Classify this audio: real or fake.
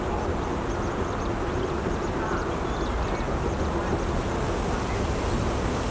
real